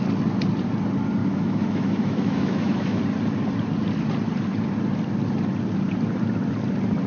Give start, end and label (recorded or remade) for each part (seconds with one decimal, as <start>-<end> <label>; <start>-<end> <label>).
0.0-1.2 recorded; 1.2-3.0 remade; 3.0-7.1 recorded